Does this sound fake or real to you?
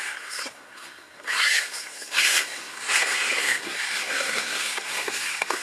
fake